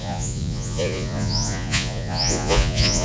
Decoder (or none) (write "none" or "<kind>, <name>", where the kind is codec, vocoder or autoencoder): vocoder, Vocos